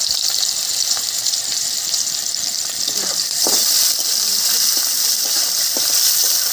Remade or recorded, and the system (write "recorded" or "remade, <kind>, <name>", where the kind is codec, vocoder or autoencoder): remade, vocoder, BigVGAN v2